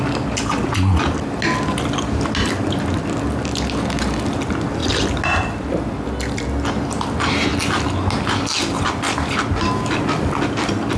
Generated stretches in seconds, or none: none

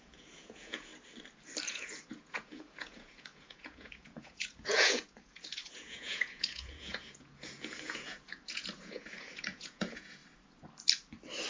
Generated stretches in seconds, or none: 0.0-0.9 (vocoder, Vocos); 1.7-10.2